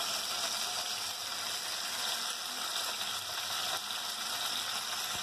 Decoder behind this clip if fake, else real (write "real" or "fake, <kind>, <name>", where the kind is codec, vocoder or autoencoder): real